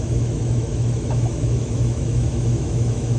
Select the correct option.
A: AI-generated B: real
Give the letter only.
A